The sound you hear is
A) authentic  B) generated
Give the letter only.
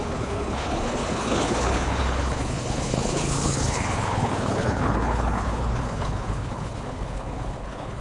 B